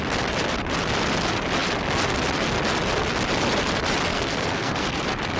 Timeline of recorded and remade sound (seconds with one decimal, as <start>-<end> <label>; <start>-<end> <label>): 0.0-4.1 recorded; 4.1-5.0 remade; 5.0-5.4 recorded